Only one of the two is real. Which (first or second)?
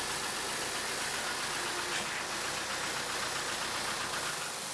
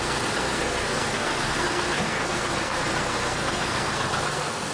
first